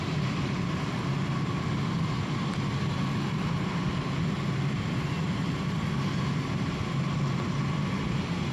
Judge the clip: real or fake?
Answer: real